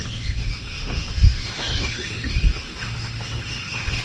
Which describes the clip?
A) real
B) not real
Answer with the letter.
B